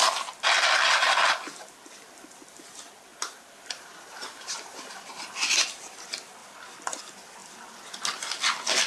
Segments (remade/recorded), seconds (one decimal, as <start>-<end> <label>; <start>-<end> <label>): 0.0-3.1 recorded; 3.1-5.1 remade; 5.1-8.9 recorded